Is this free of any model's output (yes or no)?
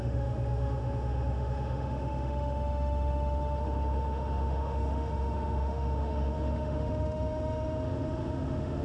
no